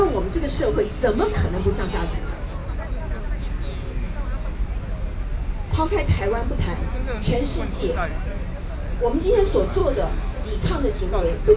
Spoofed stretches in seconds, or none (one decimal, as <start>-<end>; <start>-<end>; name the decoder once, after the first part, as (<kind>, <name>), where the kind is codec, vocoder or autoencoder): none